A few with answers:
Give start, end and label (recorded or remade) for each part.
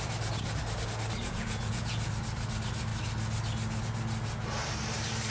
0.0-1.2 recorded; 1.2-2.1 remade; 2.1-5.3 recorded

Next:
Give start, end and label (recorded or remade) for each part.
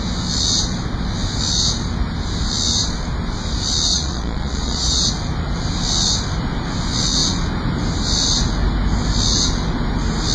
0.0-3.9 recorded; 3.9-5.1 remade; 5.1-10.3 recorded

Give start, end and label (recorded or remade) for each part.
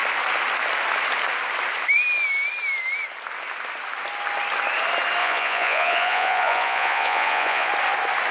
0.0-5.2 recorded; 5.2-7.7 remade; 7.7-8.3 recorded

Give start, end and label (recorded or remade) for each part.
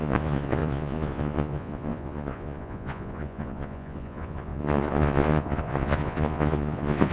0.0-7.1 remade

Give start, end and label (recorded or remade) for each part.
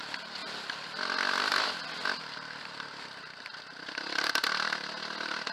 0.0-5.5 recorded